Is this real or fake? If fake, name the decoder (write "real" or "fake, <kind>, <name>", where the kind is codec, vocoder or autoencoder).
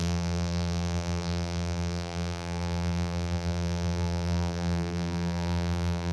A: fake, vocoder, BigVGAN v2